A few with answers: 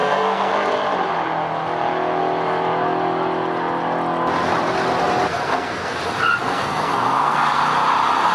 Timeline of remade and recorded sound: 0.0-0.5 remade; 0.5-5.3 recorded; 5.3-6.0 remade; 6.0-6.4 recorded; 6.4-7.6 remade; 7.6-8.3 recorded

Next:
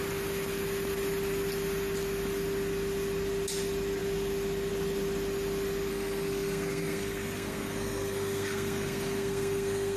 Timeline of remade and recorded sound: 0.0-5.9 recorded; 5.9-10.0 remade

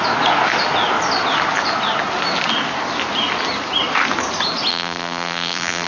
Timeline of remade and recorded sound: 0.0-4.7 recorded; 4.7-5.9 remade

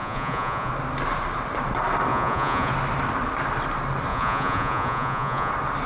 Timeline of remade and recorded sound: 0.0-0.7 remade; 0.7-2.1 recorded; 2.1-2.7 remade; 2.7-4.1 recorded; 4.1-5.5 remade; 5.5-5.9 recorded

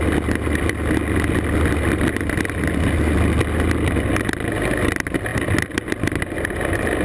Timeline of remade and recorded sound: 0.0-5.3 recorded; 5.3-7.0 remade

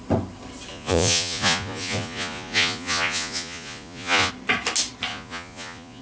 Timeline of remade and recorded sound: 0.0-0.7 recorded; 0.7-4.3 remade; 4.3-5.1 recorded; 5.1-6.0 remade